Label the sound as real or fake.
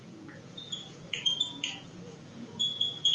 fake